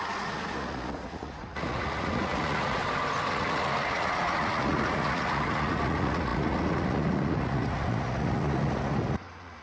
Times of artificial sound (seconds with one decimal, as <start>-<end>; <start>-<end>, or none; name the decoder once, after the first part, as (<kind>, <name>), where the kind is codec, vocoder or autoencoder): 0.0-2.8 (vocoder, Vocos); 3.3-9.6